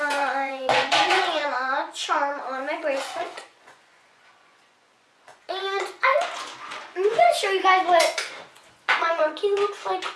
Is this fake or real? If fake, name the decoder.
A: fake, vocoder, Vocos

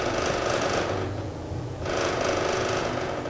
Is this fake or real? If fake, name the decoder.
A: fake, vocoder, Vocos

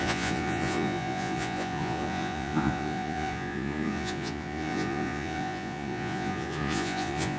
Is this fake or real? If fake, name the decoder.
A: fake, vocoder, Vocos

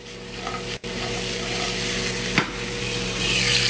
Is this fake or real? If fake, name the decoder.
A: real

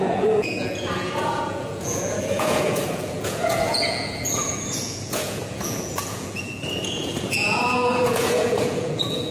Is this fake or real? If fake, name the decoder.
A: fake, vocoder, Vocos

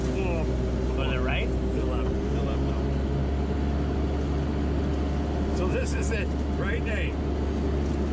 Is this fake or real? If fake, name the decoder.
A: real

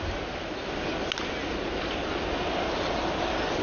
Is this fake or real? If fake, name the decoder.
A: real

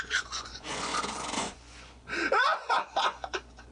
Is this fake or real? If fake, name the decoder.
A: fake, vocoder, Vocos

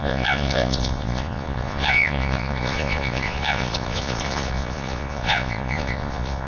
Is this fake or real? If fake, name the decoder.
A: fake, vocoder, Vocos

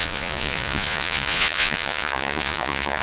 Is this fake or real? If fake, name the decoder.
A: fake, vocoder, Vocos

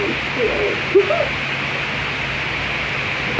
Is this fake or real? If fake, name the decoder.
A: real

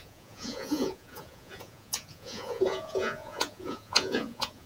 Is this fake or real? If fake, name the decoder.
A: fake, vocoder, Vocos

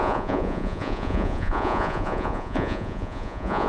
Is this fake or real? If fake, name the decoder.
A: fake, vocoder, Vocos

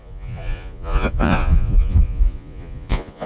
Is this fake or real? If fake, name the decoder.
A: fake, vocoder, Vocos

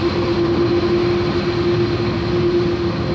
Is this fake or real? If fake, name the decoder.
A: real